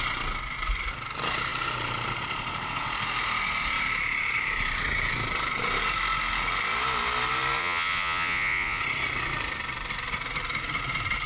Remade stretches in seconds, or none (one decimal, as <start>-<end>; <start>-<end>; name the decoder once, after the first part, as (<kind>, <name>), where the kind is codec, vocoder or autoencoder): 7.6-8.8 (vocoder, Vocos)